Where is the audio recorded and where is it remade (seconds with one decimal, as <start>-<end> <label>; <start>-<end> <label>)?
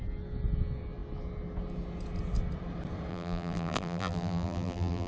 0.0-3.1 recorded; 3.1-5.1 remade